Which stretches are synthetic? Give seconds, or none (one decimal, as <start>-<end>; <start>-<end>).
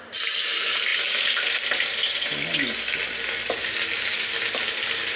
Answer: none